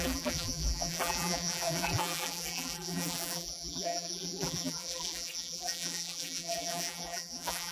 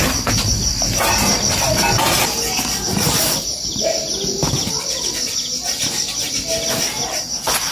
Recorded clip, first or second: second